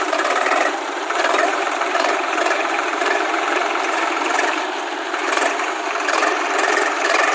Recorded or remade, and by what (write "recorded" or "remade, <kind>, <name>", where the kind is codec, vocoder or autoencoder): remade, vocoder, BigVGAN v2